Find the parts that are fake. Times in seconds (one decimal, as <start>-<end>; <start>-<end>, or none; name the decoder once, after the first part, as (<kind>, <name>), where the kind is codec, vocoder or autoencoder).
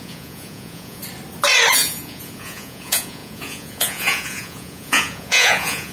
0.0-1.0 (vocoder, Vocos); 1.7-5.9